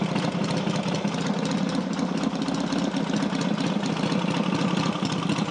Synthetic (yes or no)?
no